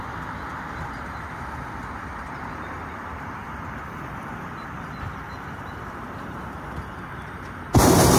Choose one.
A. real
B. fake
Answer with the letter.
A